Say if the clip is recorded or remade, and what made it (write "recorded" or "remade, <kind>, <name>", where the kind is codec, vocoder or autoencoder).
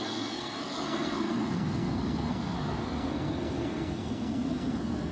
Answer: remade, codec, SNAC